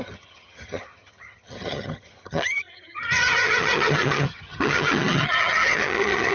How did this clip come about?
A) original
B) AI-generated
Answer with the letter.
B